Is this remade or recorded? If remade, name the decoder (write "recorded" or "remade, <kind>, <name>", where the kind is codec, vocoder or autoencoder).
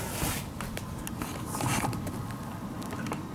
recorded